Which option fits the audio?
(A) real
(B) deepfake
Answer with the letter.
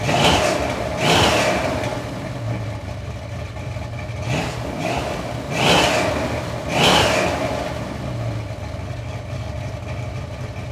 A